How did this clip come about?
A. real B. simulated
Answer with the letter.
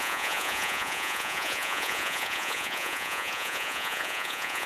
B